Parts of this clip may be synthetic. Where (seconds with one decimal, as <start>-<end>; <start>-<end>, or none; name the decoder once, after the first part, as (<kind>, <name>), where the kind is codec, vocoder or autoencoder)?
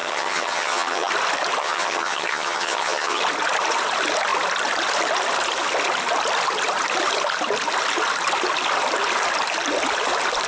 0.0-1.1 (vocoder, HiFi-GAN); 1.6-3.2